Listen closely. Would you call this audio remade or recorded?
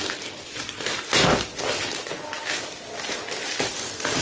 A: recorded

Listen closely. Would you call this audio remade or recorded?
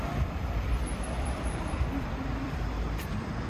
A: remade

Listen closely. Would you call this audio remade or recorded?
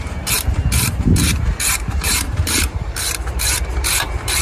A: remade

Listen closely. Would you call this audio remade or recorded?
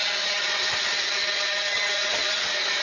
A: recorded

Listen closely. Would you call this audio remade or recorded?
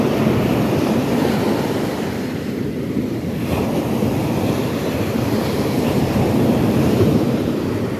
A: remade